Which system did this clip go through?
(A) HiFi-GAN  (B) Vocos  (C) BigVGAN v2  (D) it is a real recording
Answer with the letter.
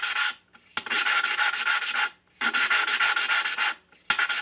D